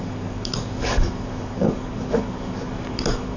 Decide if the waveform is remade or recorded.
remade